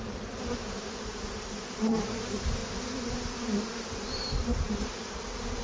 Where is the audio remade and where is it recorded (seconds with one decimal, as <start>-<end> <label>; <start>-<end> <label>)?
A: 0.0-2.6 remade; 2.6-3.6 recorded; 3.6-5.6 remade